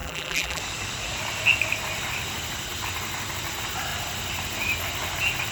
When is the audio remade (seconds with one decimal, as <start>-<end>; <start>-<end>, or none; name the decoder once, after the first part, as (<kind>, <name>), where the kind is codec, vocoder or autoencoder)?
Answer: 0.0-0.6 (vocoder, BigVGAN v2)